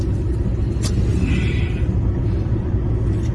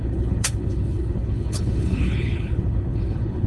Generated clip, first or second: second